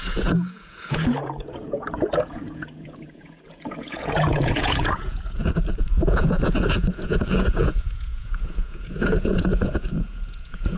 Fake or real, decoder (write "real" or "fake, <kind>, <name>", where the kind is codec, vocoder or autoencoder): fake, vocoder, Vocos